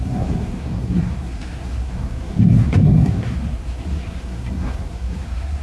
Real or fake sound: fake